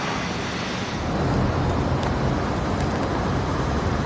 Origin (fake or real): real